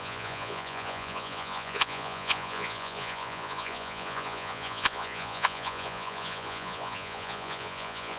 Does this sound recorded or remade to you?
remade